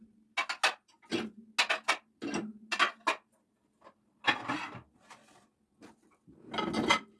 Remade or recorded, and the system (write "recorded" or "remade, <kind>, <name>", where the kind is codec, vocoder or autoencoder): recorded